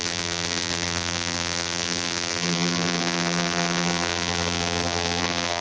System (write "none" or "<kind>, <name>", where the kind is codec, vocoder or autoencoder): vocoder, BigVGAN v2